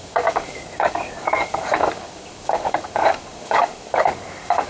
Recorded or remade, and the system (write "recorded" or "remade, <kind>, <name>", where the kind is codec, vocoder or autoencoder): remade, codec, DAC